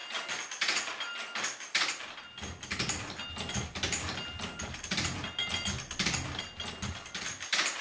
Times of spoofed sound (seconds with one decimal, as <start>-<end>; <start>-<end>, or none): none